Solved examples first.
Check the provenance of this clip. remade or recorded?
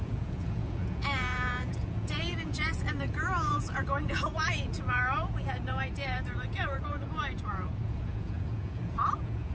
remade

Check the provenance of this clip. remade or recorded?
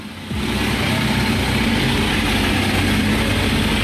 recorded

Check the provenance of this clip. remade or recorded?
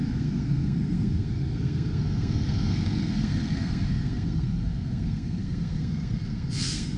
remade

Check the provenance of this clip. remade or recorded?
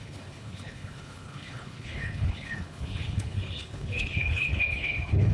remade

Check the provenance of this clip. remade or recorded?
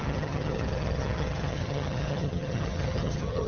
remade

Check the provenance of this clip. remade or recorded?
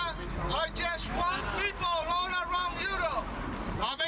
recorded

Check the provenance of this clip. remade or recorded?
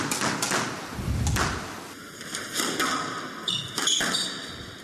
recorded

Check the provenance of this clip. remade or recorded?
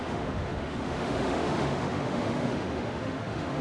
remade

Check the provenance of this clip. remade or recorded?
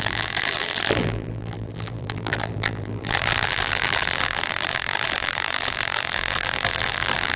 remade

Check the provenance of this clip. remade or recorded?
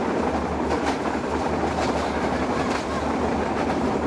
recorded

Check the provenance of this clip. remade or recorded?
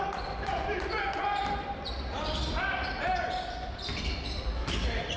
remade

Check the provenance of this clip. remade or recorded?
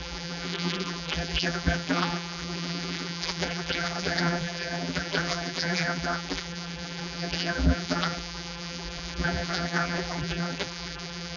remade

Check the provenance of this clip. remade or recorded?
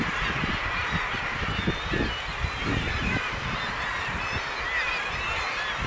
recorded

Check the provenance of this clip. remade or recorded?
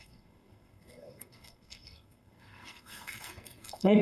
remade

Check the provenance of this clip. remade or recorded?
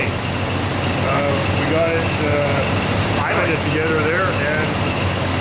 recorded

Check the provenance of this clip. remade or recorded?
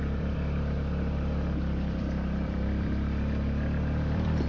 remade